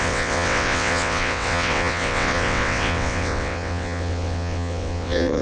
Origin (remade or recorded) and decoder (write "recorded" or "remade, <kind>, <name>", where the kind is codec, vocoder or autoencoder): remade, vocoder, WaveNeXt